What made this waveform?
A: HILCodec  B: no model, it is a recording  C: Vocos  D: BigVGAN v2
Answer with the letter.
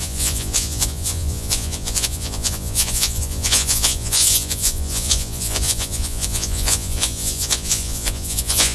C